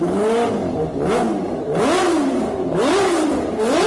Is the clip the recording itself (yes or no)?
yes